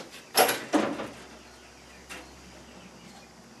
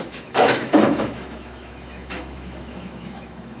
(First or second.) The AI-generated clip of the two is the second